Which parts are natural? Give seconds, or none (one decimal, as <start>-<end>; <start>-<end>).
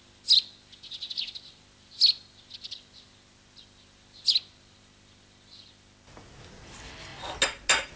0.0-8.0